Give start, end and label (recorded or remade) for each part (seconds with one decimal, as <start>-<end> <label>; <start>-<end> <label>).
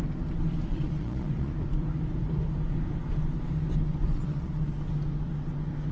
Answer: 0.0-0.7 recorded; 0.7-1.5 remade; 1.5-4.1 recorded; 4.1-4.7 remade; 4.7-5.9 recorded